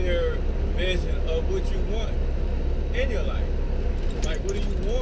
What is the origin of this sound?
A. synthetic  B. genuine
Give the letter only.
B